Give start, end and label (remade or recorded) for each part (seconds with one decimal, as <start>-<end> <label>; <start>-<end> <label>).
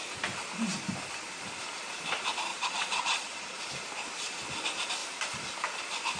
0.0-2.5 recorded; 2.5-3.6 remade; 3.6-6.2 recorded